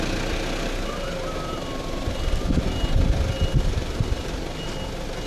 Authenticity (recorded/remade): recorded